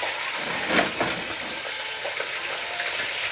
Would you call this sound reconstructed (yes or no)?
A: yes